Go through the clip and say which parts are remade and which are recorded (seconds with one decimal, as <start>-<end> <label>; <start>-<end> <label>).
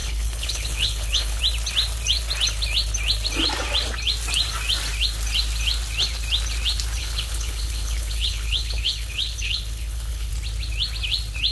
0.0-1.4 remade; 1.4-7.0 recorded; 7.0-10.3 remade; 10.3-11.5 recorded